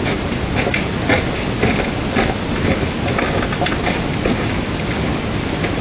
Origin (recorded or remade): recorded